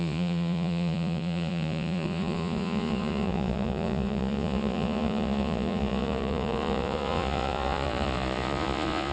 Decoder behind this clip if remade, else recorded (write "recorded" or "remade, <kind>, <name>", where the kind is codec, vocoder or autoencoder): remade, vocoder, Vocos